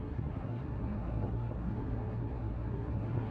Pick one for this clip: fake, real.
fake